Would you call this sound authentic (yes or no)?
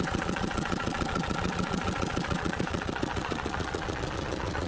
no